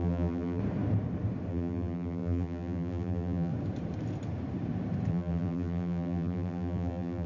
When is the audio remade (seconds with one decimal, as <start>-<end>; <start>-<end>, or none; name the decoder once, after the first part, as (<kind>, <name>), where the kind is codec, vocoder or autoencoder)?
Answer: 0.0-0.6 (vocoder, BigVGAN v2); 1.5-3.5; 5.1-7.3